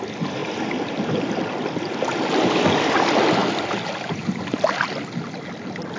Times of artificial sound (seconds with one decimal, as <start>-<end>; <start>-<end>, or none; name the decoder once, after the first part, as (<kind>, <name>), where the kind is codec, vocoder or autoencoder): none